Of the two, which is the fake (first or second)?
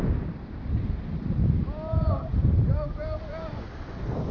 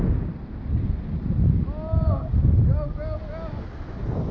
first